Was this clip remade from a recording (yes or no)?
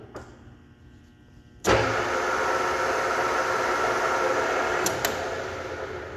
no